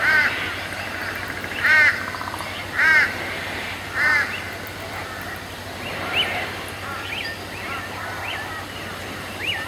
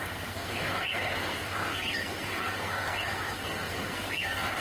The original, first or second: first